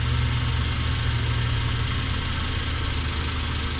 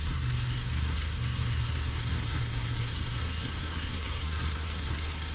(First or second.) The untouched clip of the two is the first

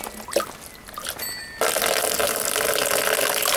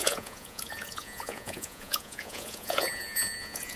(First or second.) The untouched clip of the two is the first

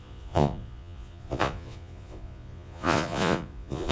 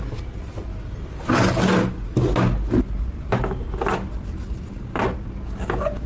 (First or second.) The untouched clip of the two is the second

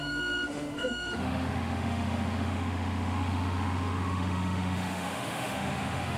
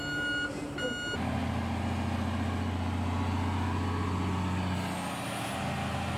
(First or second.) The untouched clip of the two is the second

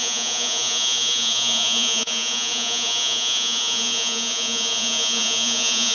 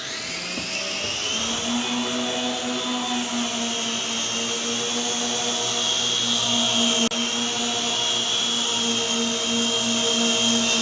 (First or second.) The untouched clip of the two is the second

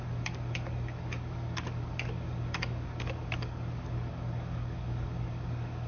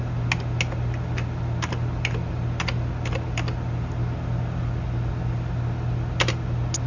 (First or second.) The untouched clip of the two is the second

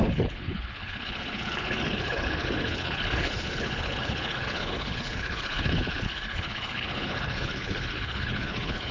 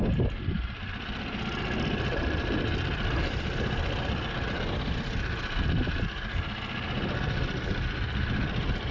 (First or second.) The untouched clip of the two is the second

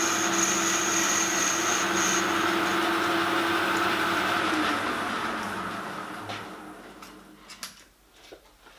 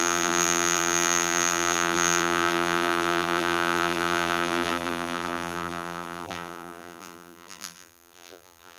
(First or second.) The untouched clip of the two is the first